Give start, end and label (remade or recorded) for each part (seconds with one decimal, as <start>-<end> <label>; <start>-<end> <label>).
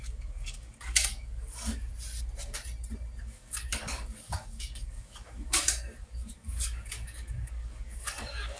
0.0-1.9 remade; 1.9-3.2 recorded; 3.2-8.6 remade